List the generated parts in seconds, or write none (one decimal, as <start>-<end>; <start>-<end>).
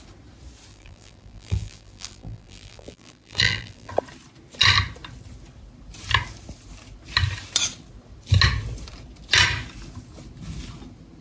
0.7-3.9